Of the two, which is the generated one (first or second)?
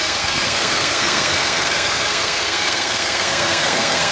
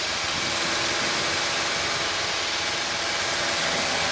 first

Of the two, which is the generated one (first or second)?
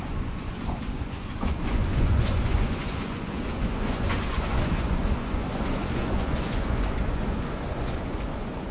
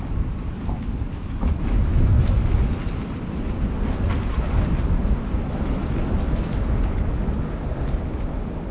first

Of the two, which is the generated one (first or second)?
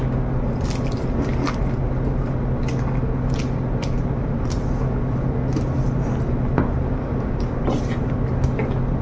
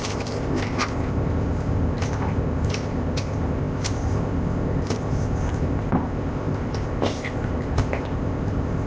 second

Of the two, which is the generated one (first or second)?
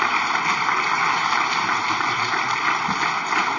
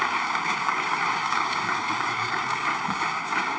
second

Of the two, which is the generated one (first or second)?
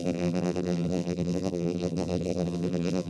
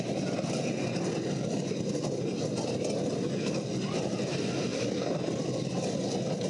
first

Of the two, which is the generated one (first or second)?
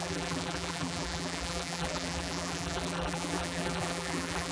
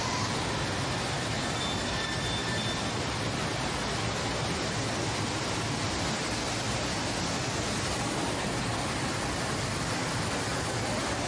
first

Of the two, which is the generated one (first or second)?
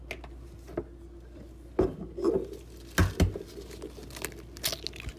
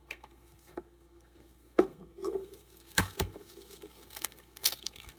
second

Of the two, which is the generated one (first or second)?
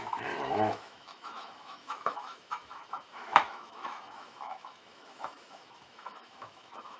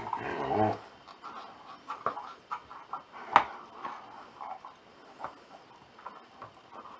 first